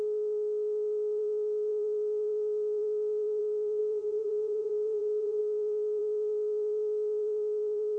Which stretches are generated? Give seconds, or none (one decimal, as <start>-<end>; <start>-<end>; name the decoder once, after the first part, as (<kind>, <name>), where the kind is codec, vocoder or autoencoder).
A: 3.8-5.4 (vocoder, Vocos)